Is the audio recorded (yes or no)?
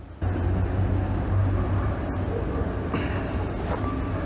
yes